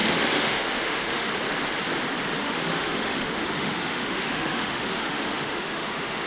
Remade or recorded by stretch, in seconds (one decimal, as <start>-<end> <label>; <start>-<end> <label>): 0.0-1.3 remade; 1.3-2.4 recorded; 2.4-6.3 remade